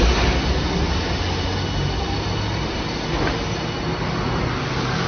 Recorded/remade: recorded